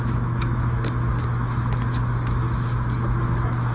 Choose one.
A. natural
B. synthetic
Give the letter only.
B